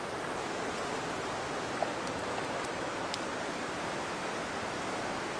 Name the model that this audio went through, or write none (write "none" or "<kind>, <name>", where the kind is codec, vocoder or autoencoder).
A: none